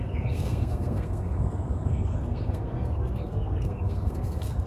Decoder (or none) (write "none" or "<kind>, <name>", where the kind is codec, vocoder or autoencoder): codec, SNAC